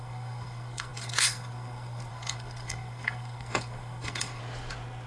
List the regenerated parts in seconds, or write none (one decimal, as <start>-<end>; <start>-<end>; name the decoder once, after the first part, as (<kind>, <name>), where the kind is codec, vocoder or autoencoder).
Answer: 0.0-4.4 (codec, SNAC)